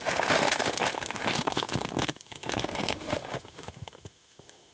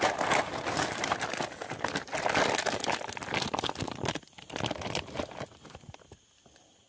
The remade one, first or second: first